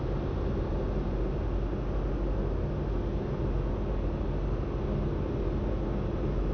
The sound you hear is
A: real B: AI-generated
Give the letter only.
A